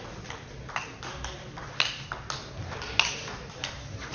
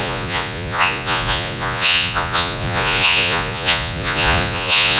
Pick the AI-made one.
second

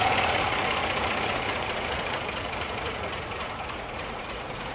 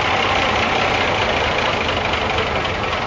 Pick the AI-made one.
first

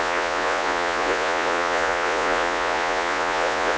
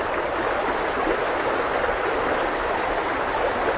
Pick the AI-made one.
first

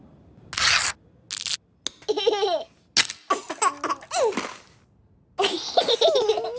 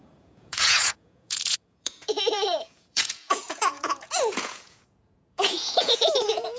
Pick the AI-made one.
second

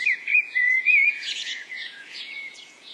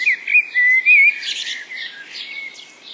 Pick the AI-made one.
first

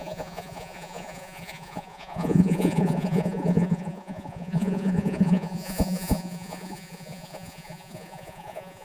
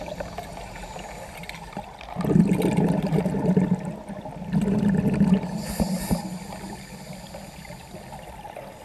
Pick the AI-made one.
first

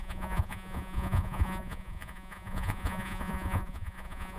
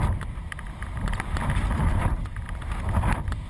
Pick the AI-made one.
first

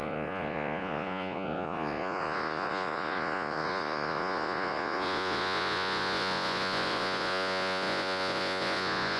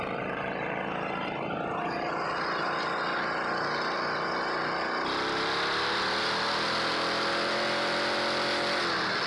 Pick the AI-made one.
first